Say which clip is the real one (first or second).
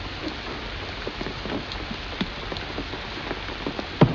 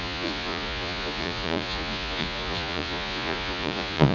first